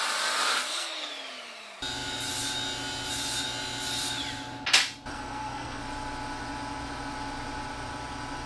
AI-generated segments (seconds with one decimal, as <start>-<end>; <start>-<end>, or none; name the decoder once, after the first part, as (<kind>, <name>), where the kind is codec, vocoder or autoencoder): 0.5-1.1 (codec, SNAC); 5.1-5.8